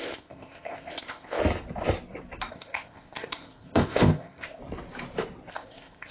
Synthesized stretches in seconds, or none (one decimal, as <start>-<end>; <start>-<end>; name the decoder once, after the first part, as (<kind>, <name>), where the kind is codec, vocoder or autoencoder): 0.0-1.4 (codec, ZipCodec); 2.5-4.6; 5.5-6.1

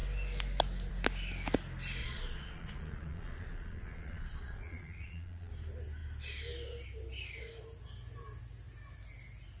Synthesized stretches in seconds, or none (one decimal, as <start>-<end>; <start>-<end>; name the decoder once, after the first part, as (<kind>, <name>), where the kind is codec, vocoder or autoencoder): 2.0-5.5 (vocoder, Vocos)